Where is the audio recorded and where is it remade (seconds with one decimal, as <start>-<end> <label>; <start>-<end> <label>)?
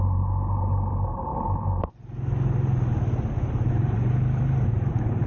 0.0-1.3 remade; 1.3-3.7 recorded; 3.7-5.3 remade